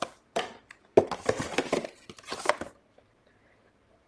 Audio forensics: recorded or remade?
remade